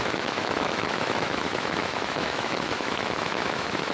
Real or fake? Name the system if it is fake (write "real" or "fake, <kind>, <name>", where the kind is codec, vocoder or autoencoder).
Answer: fake, autoencoder, DAC-VAE